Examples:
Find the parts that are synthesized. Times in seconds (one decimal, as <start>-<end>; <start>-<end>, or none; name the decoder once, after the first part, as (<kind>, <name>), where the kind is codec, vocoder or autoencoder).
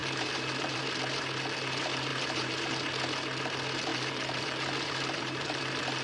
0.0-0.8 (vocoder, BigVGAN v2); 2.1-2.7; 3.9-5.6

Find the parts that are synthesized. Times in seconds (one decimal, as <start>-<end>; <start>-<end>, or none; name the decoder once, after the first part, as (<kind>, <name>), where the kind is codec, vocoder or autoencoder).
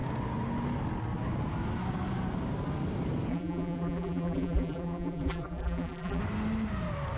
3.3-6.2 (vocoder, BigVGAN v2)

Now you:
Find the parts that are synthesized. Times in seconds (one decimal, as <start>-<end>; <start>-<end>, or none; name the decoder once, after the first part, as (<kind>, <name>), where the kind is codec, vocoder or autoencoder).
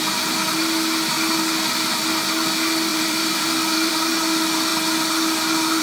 2.9-3.9 (vocoder, BigVGAN v2)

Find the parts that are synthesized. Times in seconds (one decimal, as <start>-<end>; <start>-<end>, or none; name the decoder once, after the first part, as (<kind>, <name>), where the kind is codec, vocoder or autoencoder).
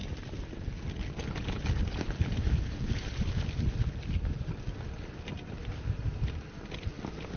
0.0-0.8 (vocoder, BigVGAN v2)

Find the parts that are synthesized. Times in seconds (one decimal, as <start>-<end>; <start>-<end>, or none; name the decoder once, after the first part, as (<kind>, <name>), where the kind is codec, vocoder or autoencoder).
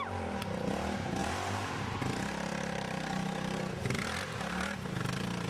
1.2-2.0 (vocoder, BigVGAN v2); 2.5-3.6